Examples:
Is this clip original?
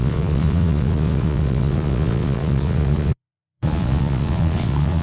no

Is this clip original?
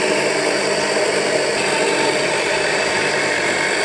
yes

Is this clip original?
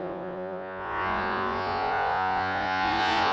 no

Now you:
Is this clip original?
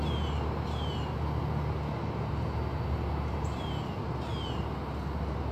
yes